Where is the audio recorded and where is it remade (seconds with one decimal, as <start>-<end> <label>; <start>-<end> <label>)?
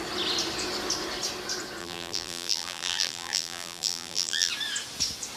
0.0-1.8 recorded; 1.8-4.5 remade; 4.5-5.4 recorded